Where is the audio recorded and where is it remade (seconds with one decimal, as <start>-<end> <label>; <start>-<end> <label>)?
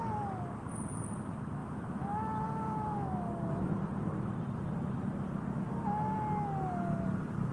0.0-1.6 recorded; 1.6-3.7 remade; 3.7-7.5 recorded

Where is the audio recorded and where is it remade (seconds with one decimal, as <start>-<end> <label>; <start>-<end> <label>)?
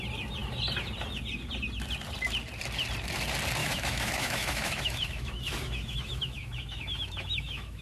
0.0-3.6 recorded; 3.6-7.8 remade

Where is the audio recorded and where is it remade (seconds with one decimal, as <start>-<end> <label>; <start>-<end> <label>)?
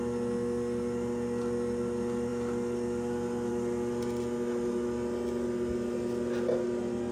0.0-7.1 recorded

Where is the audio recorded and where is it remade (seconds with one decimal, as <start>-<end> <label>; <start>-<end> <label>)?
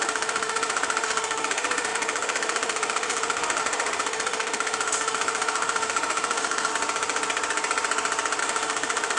0.0-6.7 remade; 6.7-8.4 recorded; 8.4-9.2 remade